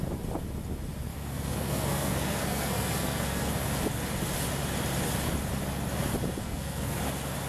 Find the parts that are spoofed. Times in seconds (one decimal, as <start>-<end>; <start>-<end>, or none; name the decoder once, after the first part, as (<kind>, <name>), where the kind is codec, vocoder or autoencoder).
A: 1.1-3.5 (codec, SNAC); 6.4-7.0